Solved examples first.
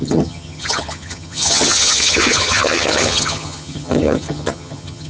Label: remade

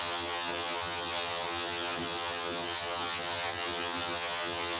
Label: remade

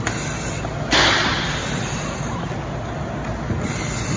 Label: recorded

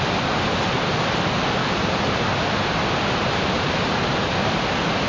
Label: recorded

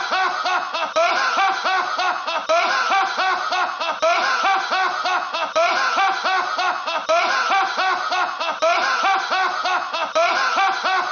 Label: recorded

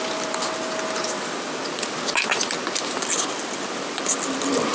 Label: recorded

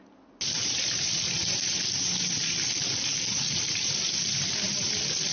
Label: recorded